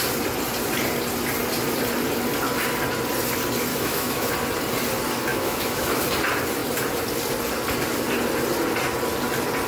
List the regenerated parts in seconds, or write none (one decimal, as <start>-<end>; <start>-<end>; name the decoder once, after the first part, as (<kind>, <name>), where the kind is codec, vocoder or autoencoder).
3.7-4.3 (autoencoder, DAC-VAE); 5.3-6.0